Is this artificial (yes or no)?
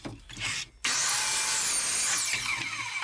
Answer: no